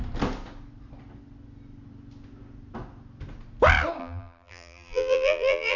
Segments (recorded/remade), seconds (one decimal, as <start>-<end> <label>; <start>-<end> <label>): 0.0-4.0 recorded; 4.0-5.8 remade